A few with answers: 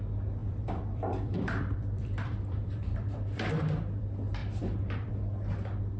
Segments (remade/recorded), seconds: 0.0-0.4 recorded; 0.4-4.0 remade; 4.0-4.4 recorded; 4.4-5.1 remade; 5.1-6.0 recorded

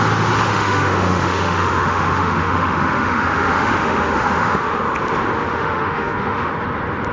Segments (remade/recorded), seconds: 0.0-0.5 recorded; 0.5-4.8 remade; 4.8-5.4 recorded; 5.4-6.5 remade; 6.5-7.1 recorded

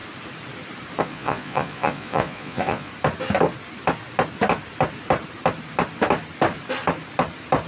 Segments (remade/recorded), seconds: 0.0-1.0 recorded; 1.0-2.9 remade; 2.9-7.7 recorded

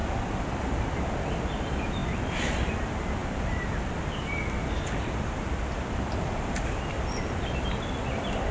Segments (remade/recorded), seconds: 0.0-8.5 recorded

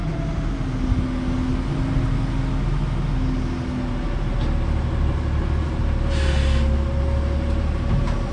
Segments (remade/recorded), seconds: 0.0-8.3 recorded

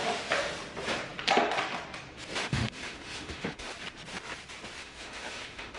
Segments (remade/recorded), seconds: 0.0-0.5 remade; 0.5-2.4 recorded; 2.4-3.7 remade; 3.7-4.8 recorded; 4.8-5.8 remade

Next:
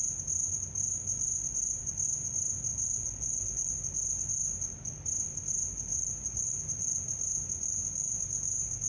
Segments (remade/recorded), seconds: 0.0-2.7 recorded; 2.7-3.7 remade; 3.7-5.9 recorded; 5.9-7.0 remade; 7.0-8.9 recorded

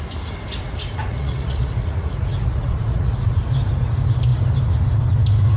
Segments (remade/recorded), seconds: 0.0-1.1 recorded; 1.1-3.4 remade; 3.4-5.6 recorded